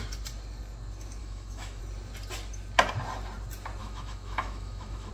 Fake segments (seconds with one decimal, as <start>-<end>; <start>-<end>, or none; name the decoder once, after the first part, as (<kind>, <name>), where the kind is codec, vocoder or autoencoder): 1.2-1.8 (autoencoder, DAC-VAE); 3.8-5.1

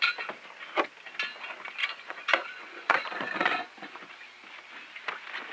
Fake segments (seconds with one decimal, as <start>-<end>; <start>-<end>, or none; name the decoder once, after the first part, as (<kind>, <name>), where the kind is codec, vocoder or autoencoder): 1.8-4.1 (vocoder, Vocos)